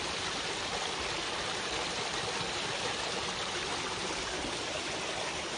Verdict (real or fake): fake